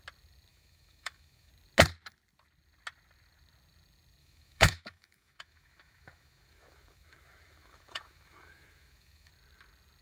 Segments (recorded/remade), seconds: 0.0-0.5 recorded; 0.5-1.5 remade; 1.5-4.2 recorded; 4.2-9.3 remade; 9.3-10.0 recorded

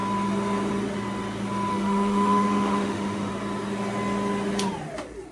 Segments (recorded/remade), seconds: 0.0-1.7 recorded; 1.7-3.3 remade; 3.3-5.3 recorded

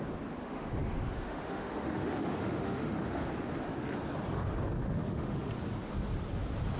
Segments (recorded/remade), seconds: 0.0-0.4 recorded; 0.4-3.3 remade; 3.3-4.8 recorded; 4.8-5.5 remade; 5.5-6.8 recorded